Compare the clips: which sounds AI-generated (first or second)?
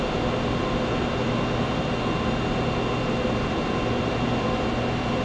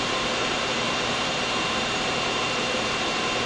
second